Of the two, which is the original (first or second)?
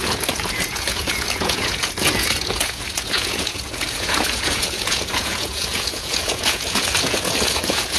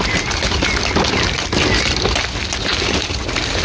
second